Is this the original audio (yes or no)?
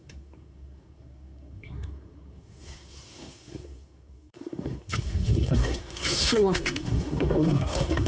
no